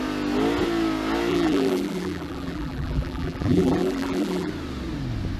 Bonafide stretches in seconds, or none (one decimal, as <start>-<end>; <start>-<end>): 0.0-1.3; 4.5-5.4